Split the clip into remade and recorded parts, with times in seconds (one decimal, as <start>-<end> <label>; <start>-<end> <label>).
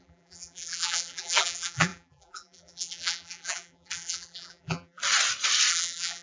0.0-5.0 remade; 5.0-5.7 recorded; 5.7-6.2 remade